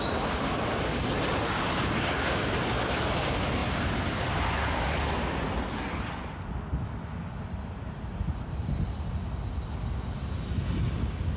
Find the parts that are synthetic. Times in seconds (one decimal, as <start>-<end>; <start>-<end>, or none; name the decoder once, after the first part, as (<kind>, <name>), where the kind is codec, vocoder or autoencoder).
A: none